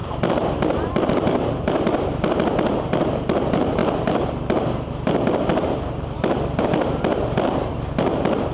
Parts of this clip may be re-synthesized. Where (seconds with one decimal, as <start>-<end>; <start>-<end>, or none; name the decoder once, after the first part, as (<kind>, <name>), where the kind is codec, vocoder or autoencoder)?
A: 0.0-0.9 (vocoder, BigVGAN v2)